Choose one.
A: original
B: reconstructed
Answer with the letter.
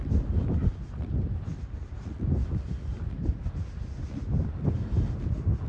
A